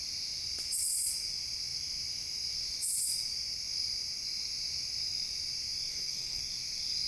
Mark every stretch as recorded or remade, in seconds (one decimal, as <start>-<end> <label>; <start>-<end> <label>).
0.0-5.9 recorded; 5.9-6.4 remade; 6.4-7.1 recorded